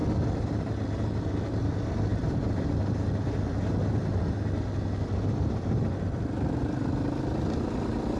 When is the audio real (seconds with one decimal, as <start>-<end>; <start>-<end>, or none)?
0.0-2.1; 2.7-8.2